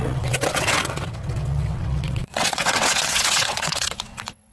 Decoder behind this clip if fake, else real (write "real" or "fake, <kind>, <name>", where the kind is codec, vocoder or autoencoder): fake, vocoder, WaveNeXt